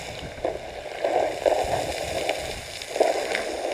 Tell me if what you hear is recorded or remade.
recorded